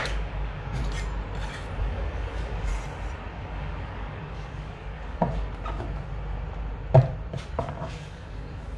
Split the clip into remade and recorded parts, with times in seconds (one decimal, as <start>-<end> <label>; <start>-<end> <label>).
0.0-0.8 remade; 0.8-1.8 recorded; 1.8-2.7 remade; 2.7-3.3 recorded; 3.3-5.2 remade; 5.2-7.6 recorded; 7.6-8.8 remade